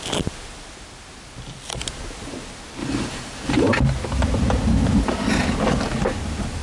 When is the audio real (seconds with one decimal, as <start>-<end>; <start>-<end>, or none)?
0.0-2.8; 3.8-6.6